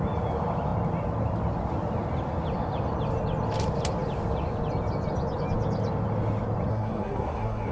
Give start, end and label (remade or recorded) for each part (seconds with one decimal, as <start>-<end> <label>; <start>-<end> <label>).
0.0-6.7 recorded; 6.7-7.7 remade